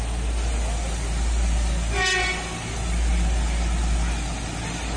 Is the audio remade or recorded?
recorded